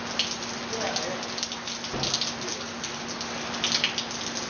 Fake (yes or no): no